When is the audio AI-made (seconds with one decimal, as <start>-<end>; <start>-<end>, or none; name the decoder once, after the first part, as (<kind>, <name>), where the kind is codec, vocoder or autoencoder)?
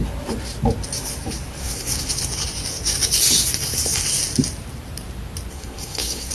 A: 1.6-2.1 (codec, SNAC); 5.5-6.3